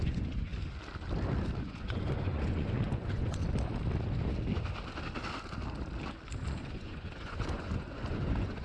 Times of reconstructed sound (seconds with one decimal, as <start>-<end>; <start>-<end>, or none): 0.0-0.5; 1.6-3.4; 6.7-8.6